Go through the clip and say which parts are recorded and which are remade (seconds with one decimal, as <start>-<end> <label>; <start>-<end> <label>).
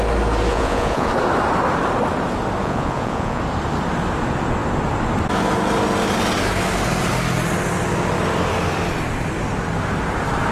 0.0-0.5 recorded; 0.5-1.1 remade; 1.1-2.6 recorded; 2.6-3.4 remade; 3.4-10.5 recorded